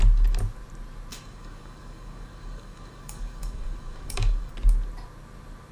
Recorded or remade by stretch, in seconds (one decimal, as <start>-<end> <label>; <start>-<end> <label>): 0.0-1.1 recorded; 1.1-4.5 remade; 4.5-5.7 recorded